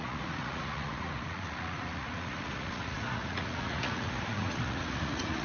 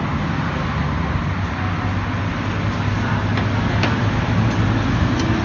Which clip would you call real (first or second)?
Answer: second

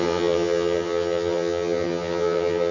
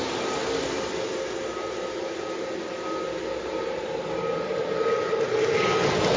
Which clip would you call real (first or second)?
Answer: second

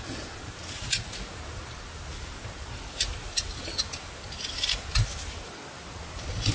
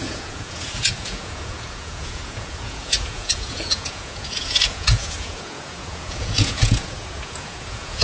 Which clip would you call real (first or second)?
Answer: first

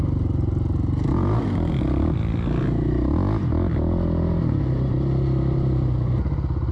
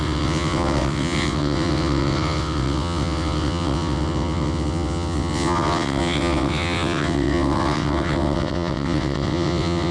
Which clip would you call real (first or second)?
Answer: first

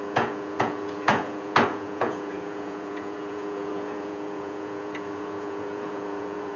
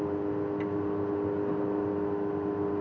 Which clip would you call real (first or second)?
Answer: second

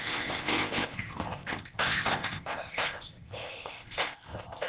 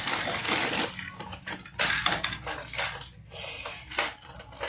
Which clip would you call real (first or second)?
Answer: second